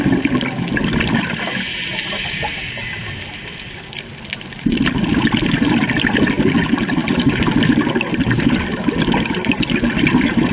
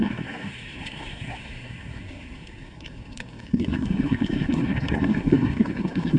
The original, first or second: first